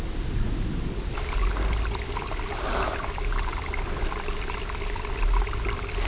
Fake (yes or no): no